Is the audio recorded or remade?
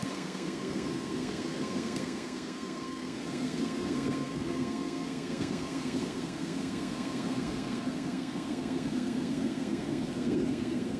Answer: remade